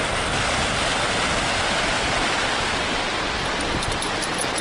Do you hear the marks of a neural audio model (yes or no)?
no